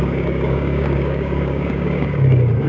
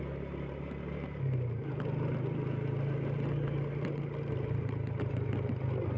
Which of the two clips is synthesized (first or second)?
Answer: first